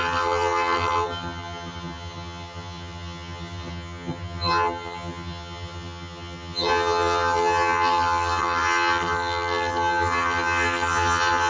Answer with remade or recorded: remade